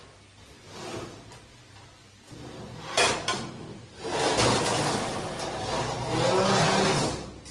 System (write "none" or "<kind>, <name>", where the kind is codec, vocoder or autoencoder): none